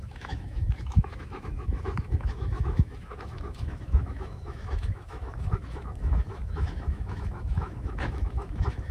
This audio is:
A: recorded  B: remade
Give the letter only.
B